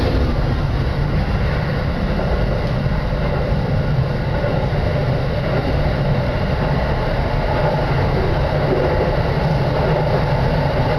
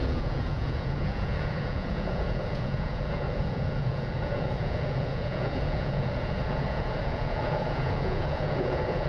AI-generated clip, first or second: second